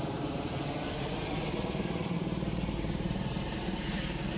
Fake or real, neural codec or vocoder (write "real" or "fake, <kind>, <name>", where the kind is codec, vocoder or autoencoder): fake, vocoder, BigVGAN v2